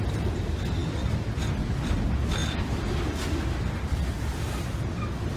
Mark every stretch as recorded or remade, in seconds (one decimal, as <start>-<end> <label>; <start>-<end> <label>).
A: 0.0-5.4 recorded